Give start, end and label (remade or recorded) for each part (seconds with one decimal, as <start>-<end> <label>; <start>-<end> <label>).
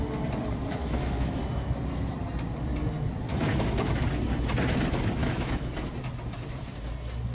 0.0-0.8 recorded; 0.8-1.4 remade; 1.4-3.3 recorded; 3.3-4.0 remade; 4.0-5.2 recorded; 5.2-5.7 remade; 5.7-7.3 recorded